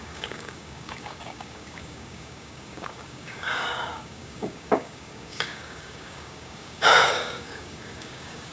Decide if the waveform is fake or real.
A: fake